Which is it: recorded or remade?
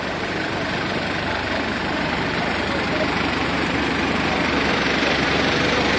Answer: remade